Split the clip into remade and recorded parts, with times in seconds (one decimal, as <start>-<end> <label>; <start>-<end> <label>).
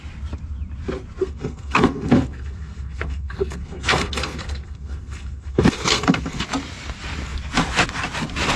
0.0-1.2 recorded; 1.2-6.4 remade; 6.4-8.6 recorded